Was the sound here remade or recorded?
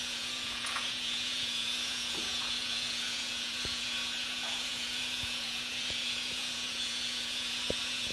remade